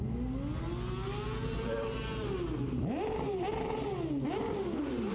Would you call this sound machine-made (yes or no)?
no